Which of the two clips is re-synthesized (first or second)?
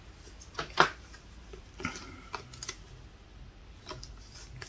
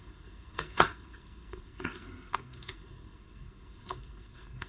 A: second